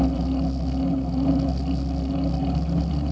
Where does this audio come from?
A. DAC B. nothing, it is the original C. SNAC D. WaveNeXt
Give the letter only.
B